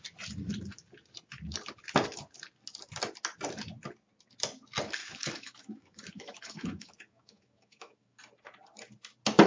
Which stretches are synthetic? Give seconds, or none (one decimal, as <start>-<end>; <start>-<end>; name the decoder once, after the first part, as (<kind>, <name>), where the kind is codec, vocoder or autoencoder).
5.0-8.2 (autoencoder, DAC-VAE)